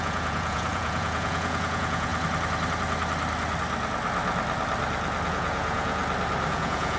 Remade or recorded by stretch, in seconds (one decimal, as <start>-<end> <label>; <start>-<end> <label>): 0.0-2.1 remade; 2.1-5.3 recorded; 5.3-6.0 remade; 6.0-6.5 recorded; 6.5-7.0 remade